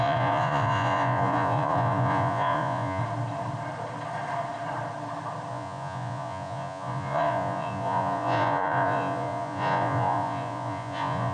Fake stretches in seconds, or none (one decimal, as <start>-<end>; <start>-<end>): 0.0-3.0; 5.5-11.3